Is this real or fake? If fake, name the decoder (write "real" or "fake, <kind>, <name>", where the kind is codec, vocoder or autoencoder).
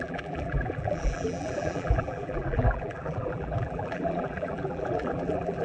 fake, vocoder, BigVGAN v2